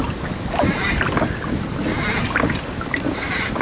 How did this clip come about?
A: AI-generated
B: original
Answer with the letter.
B